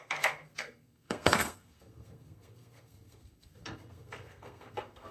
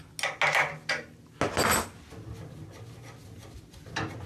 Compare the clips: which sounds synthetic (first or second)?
first